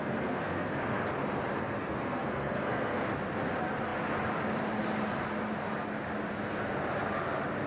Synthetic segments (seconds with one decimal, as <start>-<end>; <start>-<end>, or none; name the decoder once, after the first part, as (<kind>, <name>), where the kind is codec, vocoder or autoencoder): 0.0-0.7 (codec, SNAC); 1.8-3.0